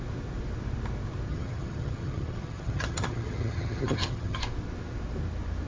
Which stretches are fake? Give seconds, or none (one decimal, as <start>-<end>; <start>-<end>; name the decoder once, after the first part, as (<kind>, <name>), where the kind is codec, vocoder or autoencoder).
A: 1.3-4.4 (vocoder, HiFi-GAN)